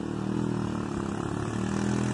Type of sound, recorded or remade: recorded